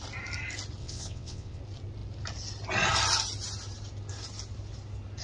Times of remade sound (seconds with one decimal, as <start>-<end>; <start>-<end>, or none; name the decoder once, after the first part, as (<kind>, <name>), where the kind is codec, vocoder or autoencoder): 0.8-1.6 (vocoder, WaveNeXt)